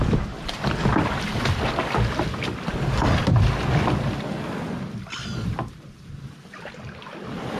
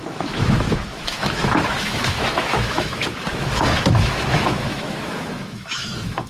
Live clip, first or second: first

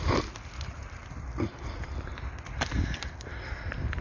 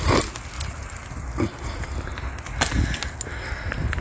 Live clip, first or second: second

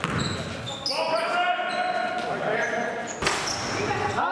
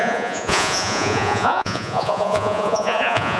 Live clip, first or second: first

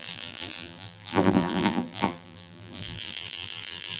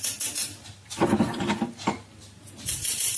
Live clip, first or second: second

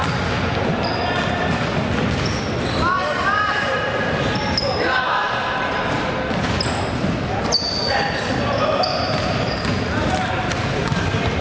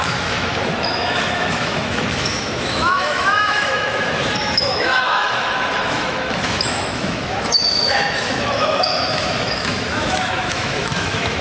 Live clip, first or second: first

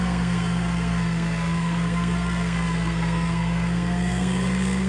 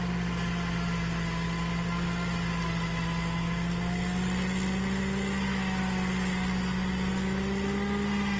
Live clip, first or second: second